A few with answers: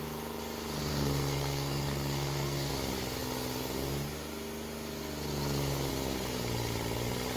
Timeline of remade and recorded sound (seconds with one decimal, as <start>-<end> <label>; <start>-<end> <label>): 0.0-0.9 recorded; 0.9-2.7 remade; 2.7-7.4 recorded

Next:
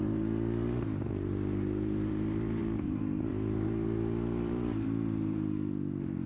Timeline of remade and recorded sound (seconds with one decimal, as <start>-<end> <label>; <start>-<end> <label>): 0.0-6.3 remade

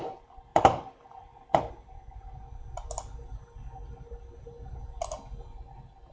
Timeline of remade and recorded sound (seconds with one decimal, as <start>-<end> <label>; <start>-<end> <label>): 0.0-0.5 recorded; 0.5-1.7 remade; 1.7-6.1 recorded

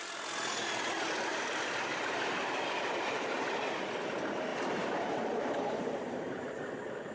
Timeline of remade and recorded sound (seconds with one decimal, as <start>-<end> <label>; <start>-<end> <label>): 0.0-1.3 recorded; 1.3-2.0 remade; 2.0-2.4 recorded; 2.4-3.7 remade; 3.7-4.5 recorded; 4.5-7.1 remade

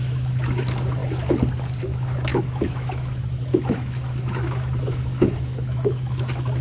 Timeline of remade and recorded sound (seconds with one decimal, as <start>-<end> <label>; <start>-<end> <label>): 0.0-1.0 remade; 1.0-1.8 recorded; 1.8-6.6 remade